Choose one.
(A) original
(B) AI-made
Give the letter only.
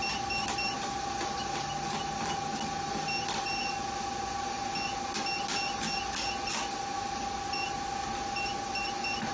A